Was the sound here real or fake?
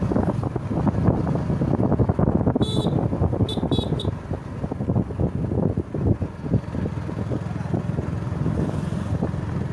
real